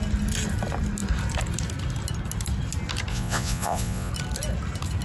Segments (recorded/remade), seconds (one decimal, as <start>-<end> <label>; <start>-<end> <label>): 0.0-3.1 recorded; 3.1-4.1 remade; 4.1-5.0 recorded